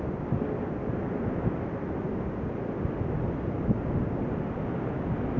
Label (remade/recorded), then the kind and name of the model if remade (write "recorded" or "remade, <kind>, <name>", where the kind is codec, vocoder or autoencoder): recorded